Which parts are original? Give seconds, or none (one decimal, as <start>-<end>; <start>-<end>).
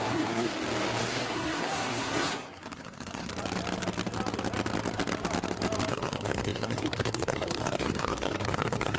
0.5-1.0; 3.3-5.9